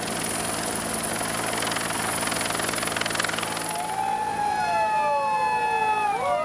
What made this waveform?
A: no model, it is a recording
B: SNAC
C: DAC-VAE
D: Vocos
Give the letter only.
A